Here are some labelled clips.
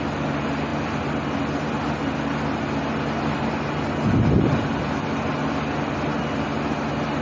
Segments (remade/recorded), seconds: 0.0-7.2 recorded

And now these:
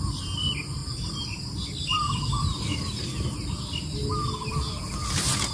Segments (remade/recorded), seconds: 0.0-5.5 recorded

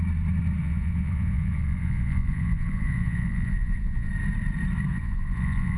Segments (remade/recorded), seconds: 0.0-0.6 recorded; 0.6-4.1 remade; 4.1-4.9 recorded; 4.9-5.8 remade

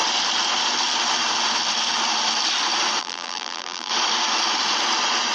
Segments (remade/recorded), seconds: 0.0-3.0 recorded; 3.0-3.9 remade; 3.9-5.3 recorded

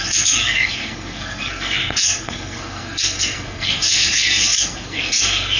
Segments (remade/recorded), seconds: 0.0-5.6 remade